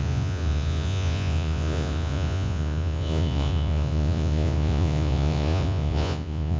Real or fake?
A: fake